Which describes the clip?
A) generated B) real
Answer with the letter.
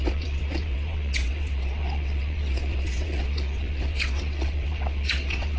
A